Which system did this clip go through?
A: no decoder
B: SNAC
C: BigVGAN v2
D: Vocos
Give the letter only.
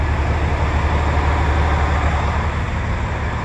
A